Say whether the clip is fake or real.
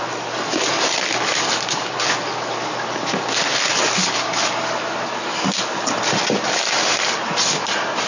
real